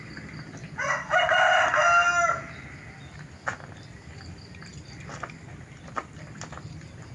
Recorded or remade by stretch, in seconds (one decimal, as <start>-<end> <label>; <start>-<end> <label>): 0.0-7.1 recorded